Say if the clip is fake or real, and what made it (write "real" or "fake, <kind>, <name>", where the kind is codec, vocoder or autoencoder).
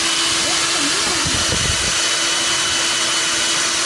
real